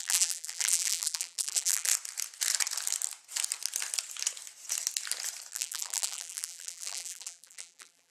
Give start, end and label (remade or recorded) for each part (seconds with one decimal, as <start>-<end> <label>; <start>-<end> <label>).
0.0-1.9 remade; 1.9-5.5 recorded; 5.5-8.1 remade